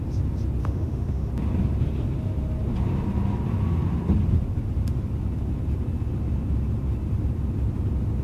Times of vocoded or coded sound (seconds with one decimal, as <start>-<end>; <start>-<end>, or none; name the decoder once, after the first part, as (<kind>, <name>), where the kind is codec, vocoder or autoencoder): 0.6-1.3 (autoencoder, DAC-VAE)